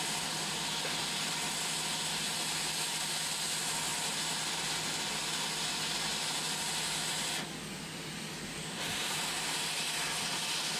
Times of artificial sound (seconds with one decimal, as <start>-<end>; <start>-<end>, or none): 7.7-9.6